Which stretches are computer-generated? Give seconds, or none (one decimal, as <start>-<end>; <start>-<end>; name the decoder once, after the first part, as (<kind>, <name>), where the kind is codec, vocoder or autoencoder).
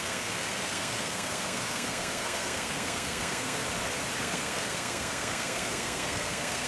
0.0-3.6 (codec, SNAC); 4.2-6.7